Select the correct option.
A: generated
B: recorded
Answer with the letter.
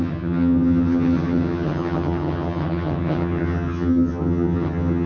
A